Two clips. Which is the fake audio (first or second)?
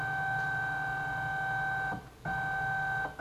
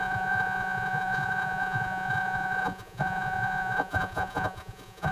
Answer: second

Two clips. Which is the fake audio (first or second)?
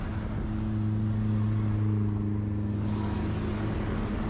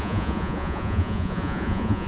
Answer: second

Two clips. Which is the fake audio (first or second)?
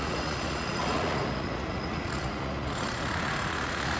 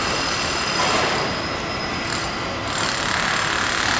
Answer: first